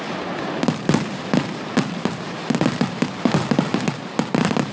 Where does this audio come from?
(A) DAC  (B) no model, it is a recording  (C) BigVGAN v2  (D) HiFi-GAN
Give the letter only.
B